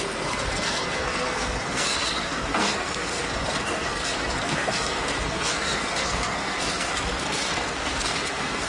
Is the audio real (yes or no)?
no